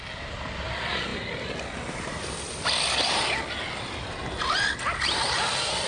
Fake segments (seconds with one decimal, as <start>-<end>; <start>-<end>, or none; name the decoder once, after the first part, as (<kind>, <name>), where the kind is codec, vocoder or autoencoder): none